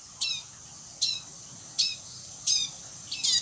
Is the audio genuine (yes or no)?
yes